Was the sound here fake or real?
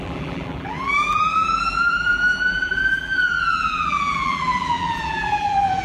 fake